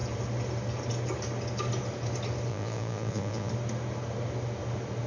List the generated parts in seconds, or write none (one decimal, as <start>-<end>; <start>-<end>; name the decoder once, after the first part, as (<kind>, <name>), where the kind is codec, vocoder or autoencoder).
2.5-3.5 (vocoder, Vocos)